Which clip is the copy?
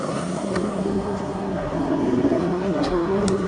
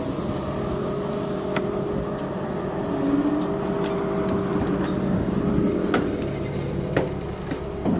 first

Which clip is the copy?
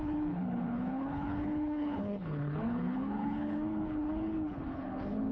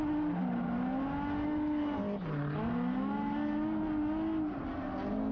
first